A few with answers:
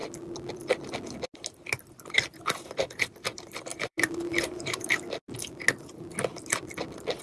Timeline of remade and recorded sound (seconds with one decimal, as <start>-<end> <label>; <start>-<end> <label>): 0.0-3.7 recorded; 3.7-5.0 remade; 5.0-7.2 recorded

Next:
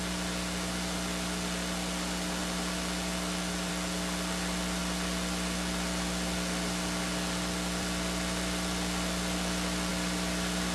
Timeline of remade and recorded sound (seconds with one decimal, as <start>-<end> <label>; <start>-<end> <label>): 0.0-10.7 recorded

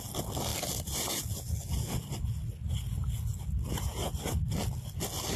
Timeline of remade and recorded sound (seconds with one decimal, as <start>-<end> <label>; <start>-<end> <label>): 0.0-5.4 recorded